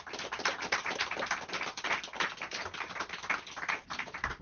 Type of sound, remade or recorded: recorded